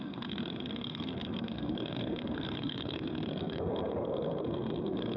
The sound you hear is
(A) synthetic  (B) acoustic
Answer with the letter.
A